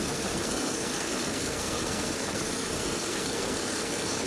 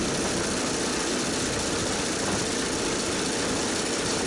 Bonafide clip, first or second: second